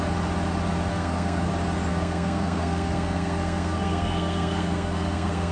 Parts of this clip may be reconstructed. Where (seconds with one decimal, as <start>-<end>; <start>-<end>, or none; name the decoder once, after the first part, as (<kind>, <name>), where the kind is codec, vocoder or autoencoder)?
0.9-1.5 (codec, SNAC); 1.9-5.5